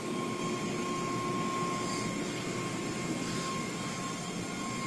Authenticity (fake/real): real